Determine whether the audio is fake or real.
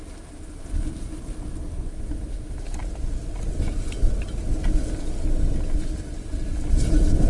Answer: real